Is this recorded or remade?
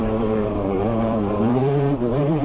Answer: remade